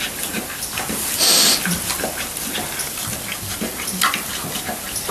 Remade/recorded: recorded